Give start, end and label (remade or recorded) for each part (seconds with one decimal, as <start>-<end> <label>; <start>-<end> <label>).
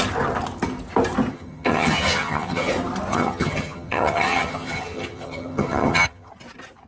0.0-1.3 recorded; 1.3-2.7 remade; 2.7-3.1 recorded; 3.1-6.3 remade; 6.3-6.9 recorded